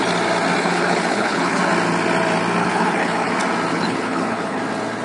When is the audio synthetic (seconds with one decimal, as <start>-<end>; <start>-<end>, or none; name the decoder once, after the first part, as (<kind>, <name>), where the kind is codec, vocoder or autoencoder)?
0.6-1.6 (codec, HILCodec); 2.6-3.3; 3.7-4.6